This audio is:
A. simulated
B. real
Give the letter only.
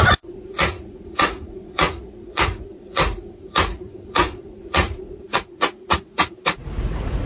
A